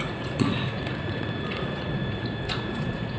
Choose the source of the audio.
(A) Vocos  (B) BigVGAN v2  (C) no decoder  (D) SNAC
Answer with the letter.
A